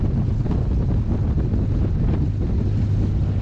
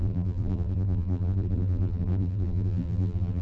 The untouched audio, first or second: first